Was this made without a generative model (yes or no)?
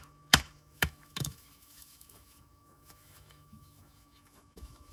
no